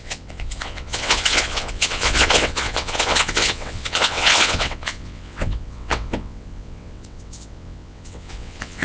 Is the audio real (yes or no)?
no